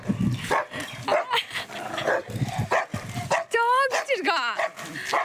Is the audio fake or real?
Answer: real